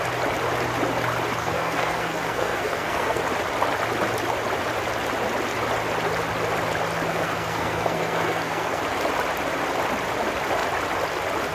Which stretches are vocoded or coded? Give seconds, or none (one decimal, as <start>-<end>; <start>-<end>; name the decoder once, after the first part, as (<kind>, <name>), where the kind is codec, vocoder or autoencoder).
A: 1.4-3.2 (codec, SNAC); 7.1-8.8